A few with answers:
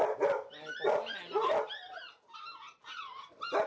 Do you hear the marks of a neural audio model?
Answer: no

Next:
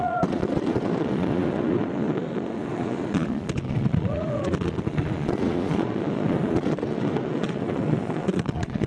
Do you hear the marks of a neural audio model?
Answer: yes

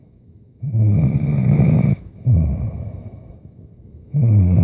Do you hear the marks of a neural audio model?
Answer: yes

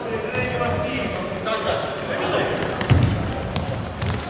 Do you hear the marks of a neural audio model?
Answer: no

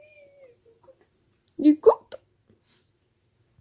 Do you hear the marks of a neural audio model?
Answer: no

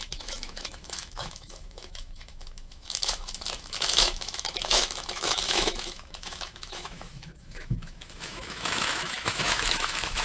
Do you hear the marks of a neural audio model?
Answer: yes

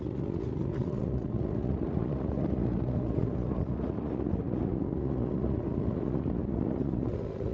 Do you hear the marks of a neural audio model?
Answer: yes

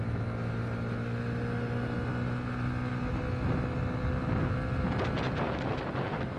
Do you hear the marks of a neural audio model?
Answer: no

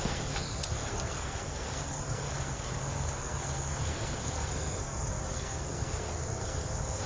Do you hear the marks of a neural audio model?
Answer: yes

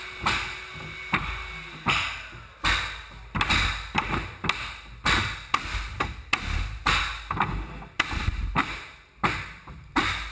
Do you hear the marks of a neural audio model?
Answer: no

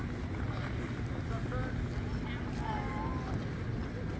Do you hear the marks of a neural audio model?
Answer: no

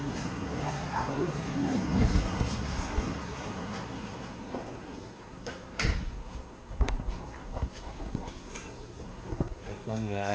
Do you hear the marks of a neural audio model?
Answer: yes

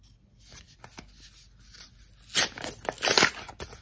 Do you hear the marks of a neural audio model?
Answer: no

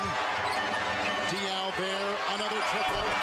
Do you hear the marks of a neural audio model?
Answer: no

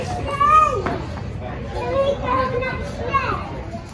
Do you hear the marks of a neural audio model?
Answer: no